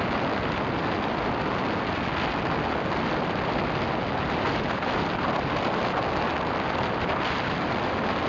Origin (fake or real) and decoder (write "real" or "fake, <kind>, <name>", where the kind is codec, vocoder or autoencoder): real